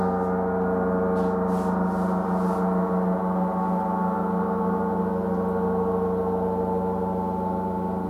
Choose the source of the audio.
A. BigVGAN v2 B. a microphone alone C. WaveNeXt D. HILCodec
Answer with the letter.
B